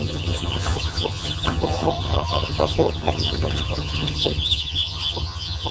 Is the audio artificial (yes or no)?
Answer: yes